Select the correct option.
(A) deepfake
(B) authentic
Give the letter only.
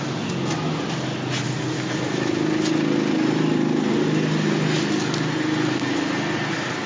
B